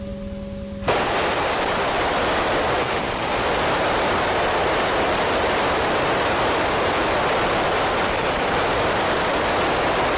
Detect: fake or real real